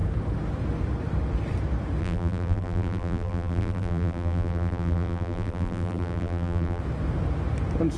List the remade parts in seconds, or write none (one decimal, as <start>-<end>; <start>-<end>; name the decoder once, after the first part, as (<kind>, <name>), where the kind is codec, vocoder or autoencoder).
2.0-6.8 (vocoder, BigVGAN v2)